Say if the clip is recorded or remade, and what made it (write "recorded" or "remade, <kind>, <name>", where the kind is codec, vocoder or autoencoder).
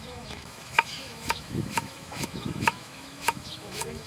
remade, autoencoder, DAC-VAE